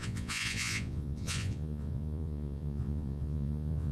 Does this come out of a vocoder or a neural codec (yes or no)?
yes